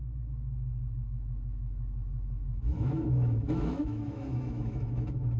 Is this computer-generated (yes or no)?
yes